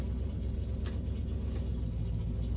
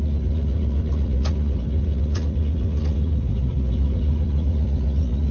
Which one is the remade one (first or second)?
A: second